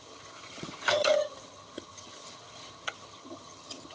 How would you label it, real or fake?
fake